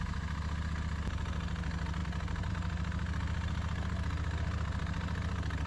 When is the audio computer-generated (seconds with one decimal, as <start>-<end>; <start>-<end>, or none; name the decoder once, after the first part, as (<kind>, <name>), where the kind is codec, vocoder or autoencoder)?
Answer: none